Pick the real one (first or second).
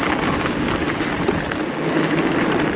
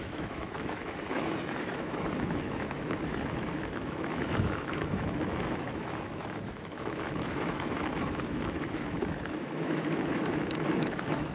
first